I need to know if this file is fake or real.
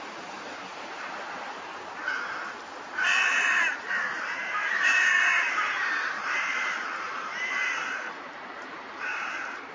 fake